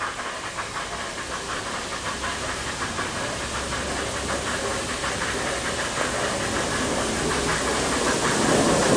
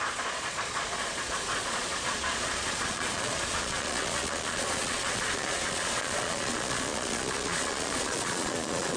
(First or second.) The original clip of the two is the first